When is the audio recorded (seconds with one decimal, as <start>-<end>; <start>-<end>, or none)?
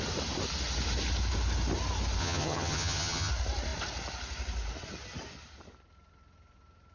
0.0-2.2; 3.3-6.9